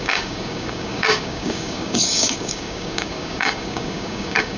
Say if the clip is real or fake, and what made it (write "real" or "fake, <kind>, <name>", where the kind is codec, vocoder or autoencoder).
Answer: fake, codec, DAC